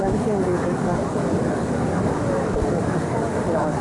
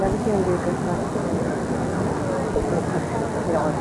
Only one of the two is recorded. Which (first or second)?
second